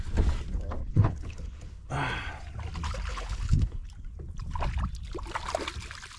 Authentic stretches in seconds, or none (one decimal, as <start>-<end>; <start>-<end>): 0.0-0.8; 1.9-3.1; 3.9-6.2